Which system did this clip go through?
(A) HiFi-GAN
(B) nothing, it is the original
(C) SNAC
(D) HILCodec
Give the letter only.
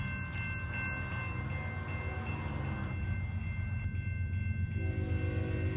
B